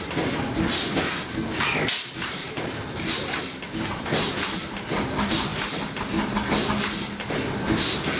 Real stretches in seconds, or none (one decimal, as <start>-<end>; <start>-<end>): 0.0-2.4; 3.4-8.2